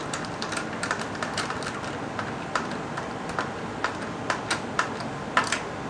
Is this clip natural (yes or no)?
yes